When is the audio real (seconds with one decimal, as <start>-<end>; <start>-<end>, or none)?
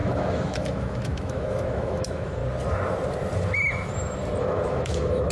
2.4-4.4